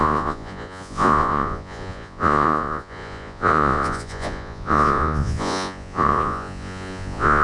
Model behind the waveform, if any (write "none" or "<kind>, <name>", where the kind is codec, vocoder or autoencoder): vocoder, Vocos